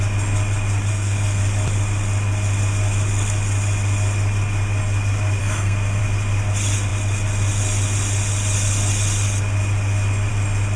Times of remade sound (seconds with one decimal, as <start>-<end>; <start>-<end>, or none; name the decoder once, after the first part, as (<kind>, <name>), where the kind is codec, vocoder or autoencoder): 0.9-1.4 (codec, SNAC); 5.4-6.0